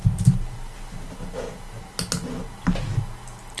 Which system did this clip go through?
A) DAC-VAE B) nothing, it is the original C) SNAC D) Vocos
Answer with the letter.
B